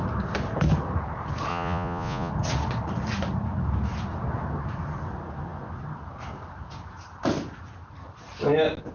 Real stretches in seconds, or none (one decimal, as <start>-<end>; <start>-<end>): 0.0-1.5; 2.3-8.9